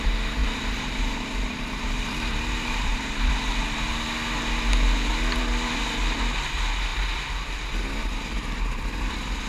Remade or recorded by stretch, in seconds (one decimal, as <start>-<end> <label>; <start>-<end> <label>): 0.0-0.4 recorded; 0.4-3.3 remade; 3.3-9.5 recorded